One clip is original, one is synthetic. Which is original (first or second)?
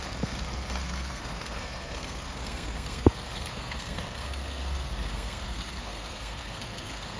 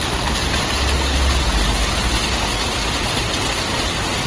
second